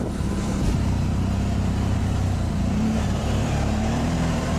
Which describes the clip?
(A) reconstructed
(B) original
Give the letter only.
A